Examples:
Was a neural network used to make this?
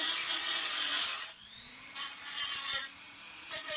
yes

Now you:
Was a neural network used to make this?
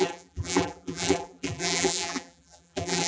yes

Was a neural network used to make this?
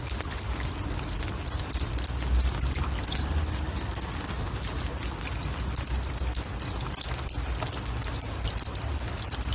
no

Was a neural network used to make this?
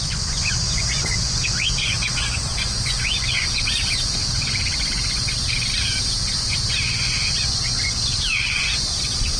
yes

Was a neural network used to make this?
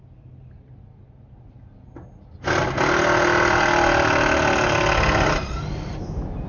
no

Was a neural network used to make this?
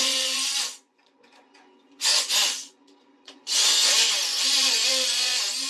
yes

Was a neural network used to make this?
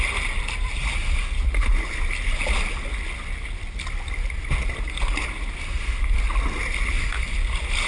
no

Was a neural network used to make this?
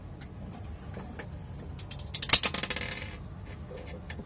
no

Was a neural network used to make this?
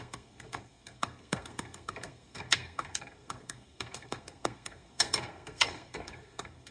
yes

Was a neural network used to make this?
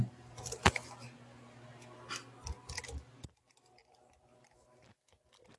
yes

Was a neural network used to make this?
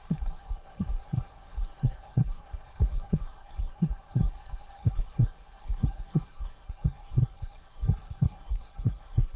yes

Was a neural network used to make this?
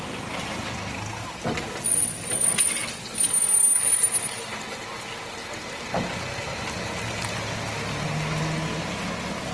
no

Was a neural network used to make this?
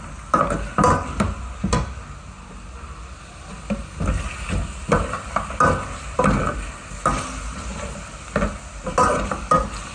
no